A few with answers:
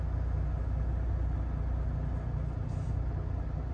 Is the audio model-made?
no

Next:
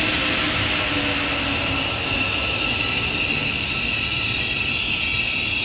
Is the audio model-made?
no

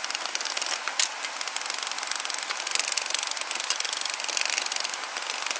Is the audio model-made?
no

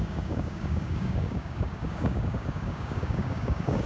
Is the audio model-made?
yes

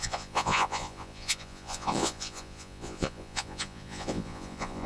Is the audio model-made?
yes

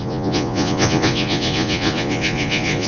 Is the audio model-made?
yes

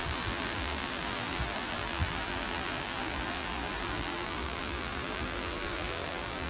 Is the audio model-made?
yes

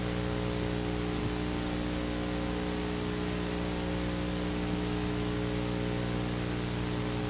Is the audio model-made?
no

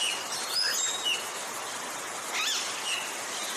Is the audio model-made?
no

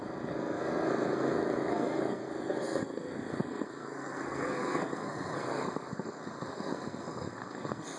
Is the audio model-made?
yes